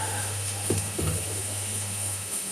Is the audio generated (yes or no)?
yes